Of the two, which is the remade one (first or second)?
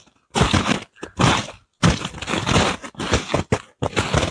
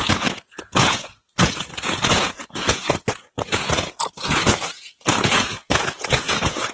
second